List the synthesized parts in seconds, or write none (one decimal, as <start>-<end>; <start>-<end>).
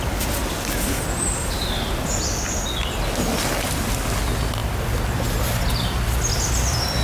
none